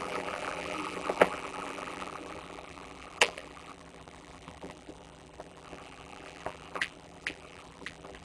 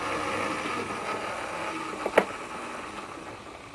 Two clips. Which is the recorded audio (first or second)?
second